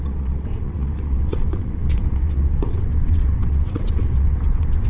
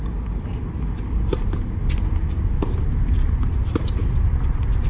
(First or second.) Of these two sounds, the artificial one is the first